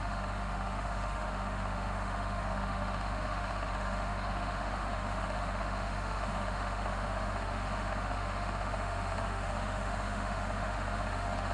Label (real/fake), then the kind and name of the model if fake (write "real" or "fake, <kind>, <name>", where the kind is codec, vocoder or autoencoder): fake, autoencoder, DAC-VAE